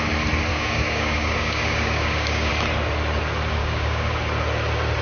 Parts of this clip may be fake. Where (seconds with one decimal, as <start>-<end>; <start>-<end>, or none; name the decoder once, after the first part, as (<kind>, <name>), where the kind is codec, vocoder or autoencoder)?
0.5-2.5 (codec, DAC); 3.6-4.1

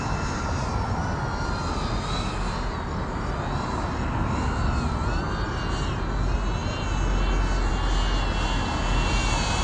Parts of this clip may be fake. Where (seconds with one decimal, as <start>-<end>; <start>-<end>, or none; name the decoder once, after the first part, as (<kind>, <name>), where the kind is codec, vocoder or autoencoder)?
none

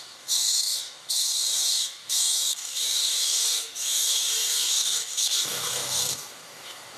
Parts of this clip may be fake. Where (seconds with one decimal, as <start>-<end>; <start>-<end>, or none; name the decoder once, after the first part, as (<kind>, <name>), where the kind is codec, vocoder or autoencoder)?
0.0-7.0 (codec, DAC)

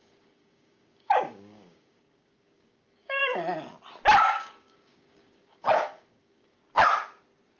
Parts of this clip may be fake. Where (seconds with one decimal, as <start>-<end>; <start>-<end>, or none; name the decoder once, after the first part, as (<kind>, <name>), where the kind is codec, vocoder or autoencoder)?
0.0-3.2 (codec, DAC); 4.3-6.6

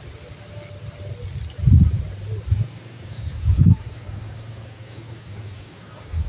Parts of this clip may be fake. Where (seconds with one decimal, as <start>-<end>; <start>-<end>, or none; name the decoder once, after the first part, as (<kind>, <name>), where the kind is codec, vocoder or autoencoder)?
2.5-6.3 (codec, DAC)

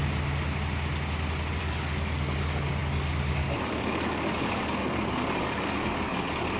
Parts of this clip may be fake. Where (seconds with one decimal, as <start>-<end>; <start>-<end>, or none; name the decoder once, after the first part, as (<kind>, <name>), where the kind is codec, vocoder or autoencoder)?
1.6-6.6 (codec, DAC)

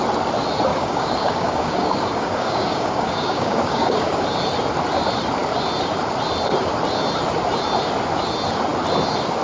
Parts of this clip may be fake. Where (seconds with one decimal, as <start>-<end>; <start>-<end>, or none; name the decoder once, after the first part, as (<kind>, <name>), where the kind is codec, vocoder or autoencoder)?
0.7-4.2 (codec, DAC)

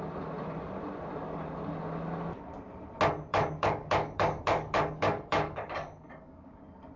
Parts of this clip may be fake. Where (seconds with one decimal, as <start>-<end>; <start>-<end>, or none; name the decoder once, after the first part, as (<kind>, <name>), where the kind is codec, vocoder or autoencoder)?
3.3-6.6 (codec, DAC)